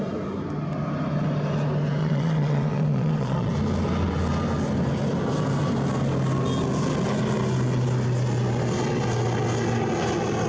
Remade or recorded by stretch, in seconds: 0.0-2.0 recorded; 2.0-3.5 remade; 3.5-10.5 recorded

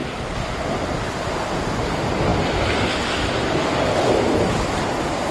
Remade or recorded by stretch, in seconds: 0.0-5.3 recorded

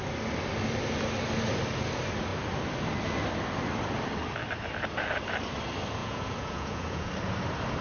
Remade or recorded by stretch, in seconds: 0.0-6.0 recorded; 6.0-7.1 remade; 7.1-7.8 recorded